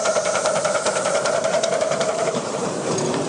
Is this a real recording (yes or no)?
no